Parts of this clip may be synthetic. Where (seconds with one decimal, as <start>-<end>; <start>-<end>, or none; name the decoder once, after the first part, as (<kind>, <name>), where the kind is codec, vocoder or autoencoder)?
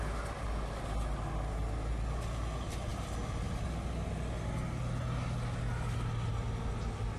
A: none